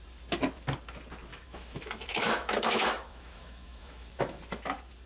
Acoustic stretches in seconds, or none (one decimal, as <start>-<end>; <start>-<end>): 0.0-1.3; 4.4-5.1